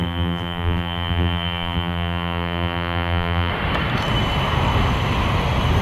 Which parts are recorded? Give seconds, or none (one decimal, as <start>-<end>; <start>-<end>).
3.5-5.8